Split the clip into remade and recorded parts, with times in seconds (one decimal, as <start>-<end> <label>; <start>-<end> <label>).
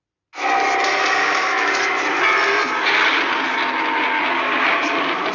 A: 0.0-1.2 recorded; 1.2-1.7 remade; 1.7-5.3 recorded